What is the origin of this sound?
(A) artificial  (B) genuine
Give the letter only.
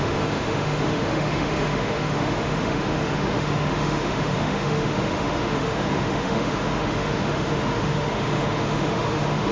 A